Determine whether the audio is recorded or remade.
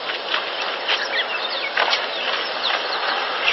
recorded